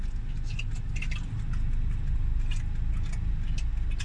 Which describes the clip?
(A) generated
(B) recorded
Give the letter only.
B